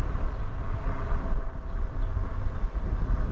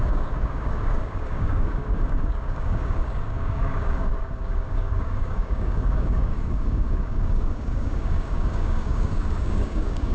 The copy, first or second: second